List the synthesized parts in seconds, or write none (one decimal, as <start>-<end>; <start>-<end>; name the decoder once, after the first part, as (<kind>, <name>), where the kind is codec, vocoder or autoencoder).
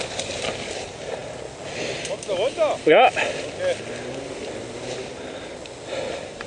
none